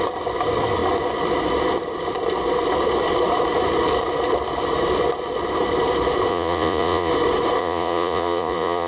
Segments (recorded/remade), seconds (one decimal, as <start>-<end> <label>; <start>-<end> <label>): 0.0-6.3 recorded; 6.3-7.1 remade; 7.1-7.6 recorded; 7.6-8.9 remade